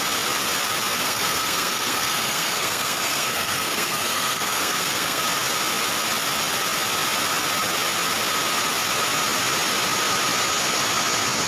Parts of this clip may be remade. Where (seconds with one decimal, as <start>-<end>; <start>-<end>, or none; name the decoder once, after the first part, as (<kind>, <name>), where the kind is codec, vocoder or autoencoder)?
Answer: 1.0-5.2 (codec, SNAC)